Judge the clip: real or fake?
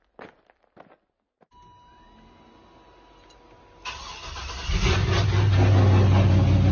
real